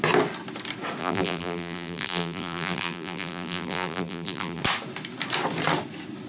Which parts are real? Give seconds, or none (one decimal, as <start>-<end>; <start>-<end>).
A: 0.0-1.0; 4.6-6.3